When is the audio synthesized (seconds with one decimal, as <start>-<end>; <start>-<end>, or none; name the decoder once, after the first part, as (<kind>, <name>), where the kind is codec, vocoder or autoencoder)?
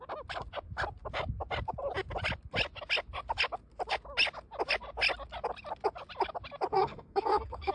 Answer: 6.7-7.7 (codec, SNAC)